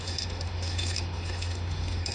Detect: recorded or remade remade